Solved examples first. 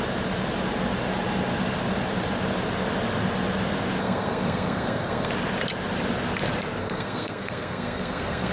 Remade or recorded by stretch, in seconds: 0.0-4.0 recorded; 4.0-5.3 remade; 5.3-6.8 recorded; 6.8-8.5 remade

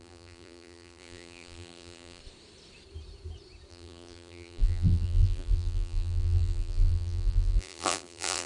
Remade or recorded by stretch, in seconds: 0.0-2.2 remade; 2.2-3.7 recorded; 3.7-8.5 remade

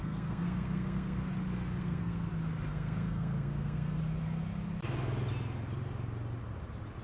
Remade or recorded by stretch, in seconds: 0.0-1.3 remade; 1.3-1.8 recorded; 1.8-2.3 remade; 2.3-2.7 recorded; 2.7-4.0 remade; 4.0-7.0 recorded